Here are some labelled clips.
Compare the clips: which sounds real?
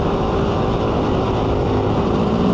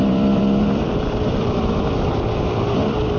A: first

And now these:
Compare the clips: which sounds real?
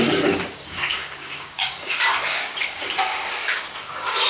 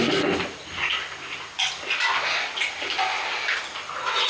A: second